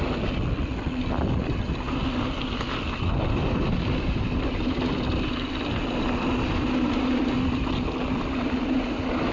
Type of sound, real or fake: real